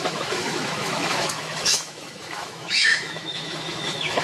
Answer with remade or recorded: remade